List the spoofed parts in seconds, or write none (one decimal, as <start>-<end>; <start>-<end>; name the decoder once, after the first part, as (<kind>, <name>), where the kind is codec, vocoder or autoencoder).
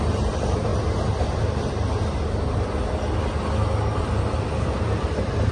0.0-0.7 (vocoder, BigVGAN v2); 4.0-5.5